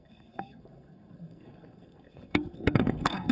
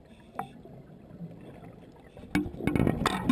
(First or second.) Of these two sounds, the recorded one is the second